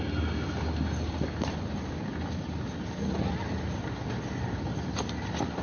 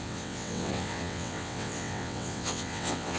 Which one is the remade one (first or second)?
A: second